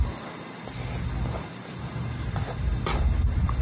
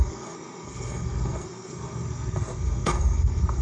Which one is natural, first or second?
first